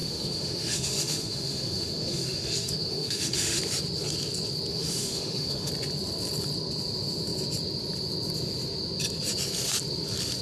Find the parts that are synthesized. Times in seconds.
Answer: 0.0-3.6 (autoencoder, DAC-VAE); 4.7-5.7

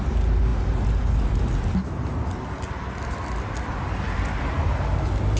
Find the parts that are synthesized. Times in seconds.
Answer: none

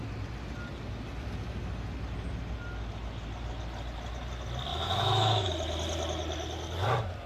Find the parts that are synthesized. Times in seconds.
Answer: 4.7-5.5 (autoencoder, DAC-VAE)

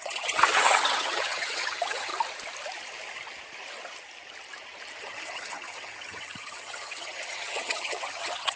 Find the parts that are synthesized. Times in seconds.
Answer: 0.0-2.1 (vocoder, HiFi-GAN); 5.0-8.6

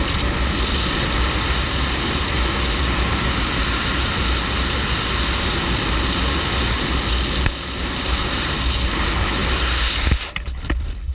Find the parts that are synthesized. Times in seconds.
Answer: none

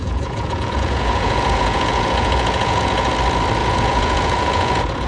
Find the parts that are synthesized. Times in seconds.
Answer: 0.0-3.1 (vocoder, Vocos); 3.6-5.1

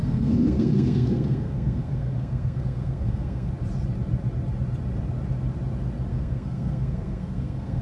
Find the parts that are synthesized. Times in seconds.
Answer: 0.0-3.5 (codec, SNAC); 6.1-7.8

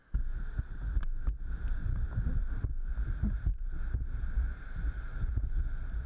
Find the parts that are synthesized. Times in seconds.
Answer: 3.5-6.1 (vocoder, BigVGAN v2)